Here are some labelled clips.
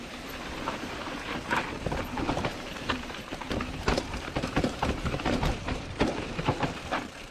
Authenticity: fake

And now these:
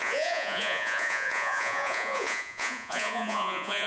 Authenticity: fake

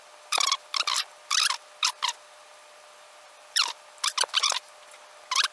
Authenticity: fake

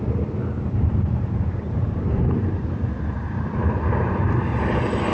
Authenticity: fake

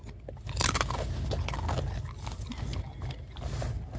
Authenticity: real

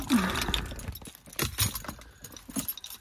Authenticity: real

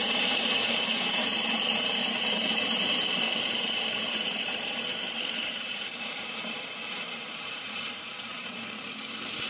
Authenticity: fake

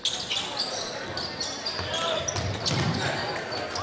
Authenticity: real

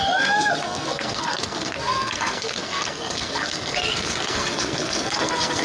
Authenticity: fake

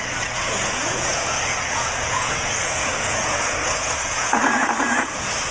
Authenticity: fake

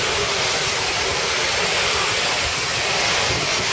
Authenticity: real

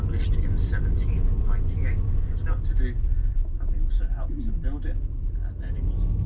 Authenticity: real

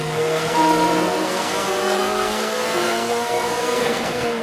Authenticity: fake